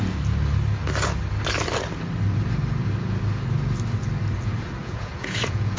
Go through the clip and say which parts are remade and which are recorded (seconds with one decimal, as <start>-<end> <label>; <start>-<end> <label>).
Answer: 0.0-4.8 recorded; 4.8-5.8 remade